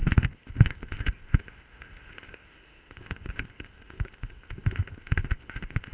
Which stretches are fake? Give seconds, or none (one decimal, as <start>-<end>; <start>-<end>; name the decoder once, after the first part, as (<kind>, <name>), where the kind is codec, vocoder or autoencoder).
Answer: 0.0-5.9 (codec, ZipCodec)